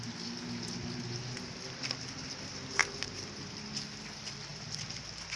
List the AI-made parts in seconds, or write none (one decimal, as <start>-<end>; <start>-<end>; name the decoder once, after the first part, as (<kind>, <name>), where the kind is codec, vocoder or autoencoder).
none